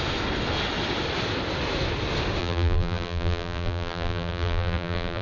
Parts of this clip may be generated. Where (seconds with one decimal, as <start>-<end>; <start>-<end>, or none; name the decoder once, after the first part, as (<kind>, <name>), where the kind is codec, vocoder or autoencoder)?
2.4-5.2 (vocoder, BigVGAN v2)